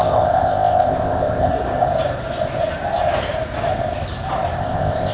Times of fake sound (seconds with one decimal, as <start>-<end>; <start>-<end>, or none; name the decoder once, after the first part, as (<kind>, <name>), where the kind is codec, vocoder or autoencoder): 0.0-1.5 (codec, ZipCodec); 4.6-5.1